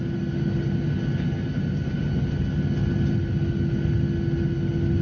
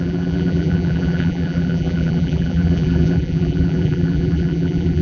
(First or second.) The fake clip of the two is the second